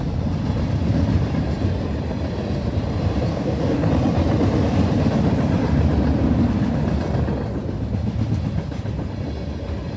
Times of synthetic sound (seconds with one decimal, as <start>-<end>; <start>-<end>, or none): 3.3-3.9